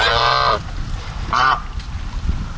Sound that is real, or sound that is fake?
real